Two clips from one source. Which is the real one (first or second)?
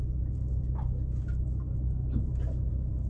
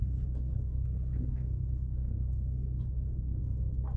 first